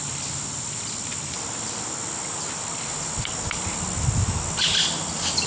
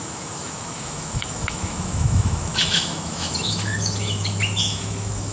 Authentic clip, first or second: first